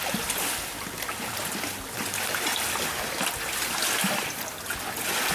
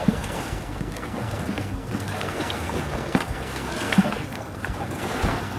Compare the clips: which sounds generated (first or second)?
second